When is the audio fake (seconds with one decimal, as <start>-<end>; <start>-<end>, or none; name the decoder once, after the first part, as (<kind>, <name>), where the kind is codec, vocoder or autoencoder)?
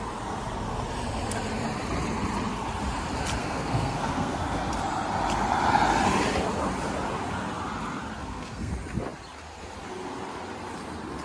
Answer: 3.4-4.7 (codec, SNAC); 8.2-8.7